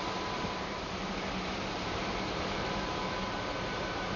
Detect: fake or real fake